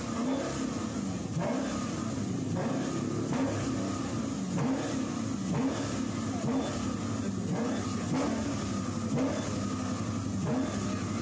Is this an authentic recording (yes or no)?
yes